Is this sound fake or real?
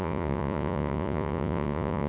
fake